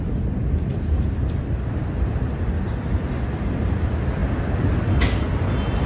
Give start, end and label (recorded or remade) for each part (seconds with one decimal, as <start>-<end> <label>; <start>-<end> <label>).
0.0-5.9 recorded